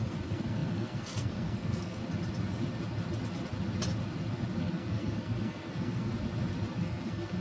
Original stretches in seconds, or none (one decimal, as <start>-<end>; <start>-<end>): 2.0-4.6; 6.1-6.8